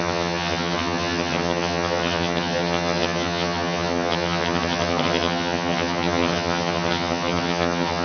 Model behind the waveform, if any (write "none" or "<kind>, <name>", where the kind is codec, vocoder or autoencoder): vocoder, HiFi-GAN